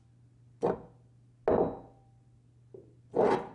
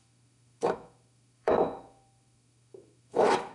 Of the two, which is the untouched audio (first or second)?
first